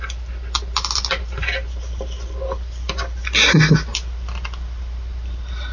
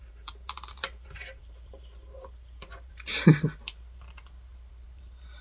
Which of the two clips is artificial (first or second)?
second